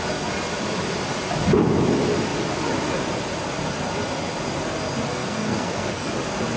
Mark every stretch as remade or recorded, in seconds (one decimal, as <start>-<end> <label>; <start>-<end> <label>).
0.0-5.1 recorded; 5.1-6.1 remade; 6.1-6.6 recorded